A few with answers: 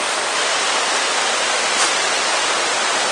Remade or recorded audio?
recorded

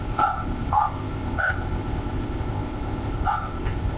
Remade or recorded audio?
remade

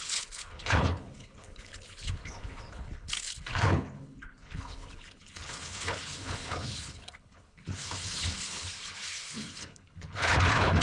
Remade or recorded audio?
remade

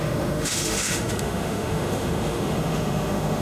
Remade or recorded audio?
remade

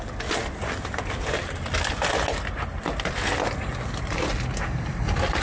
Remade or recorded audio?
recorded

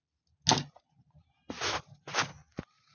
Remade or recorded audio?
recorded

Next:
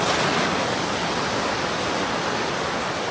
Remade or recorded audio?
recorded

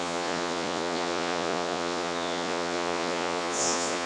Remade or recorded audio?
remade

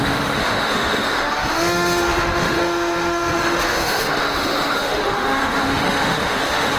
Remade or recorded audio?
remade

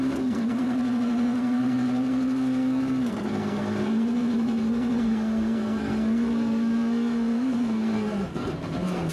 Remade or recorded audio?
remade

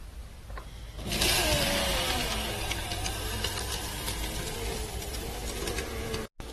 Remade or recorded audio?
recorded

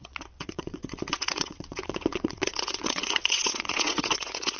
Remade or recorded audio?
remade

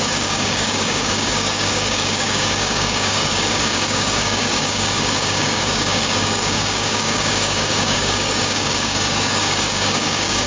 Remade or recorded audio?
remade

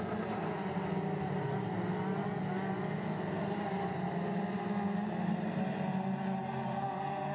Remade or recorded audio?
recorded